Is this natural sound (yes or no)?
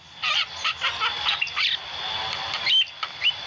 yes